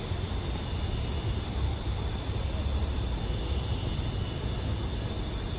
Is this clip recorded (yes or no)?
yes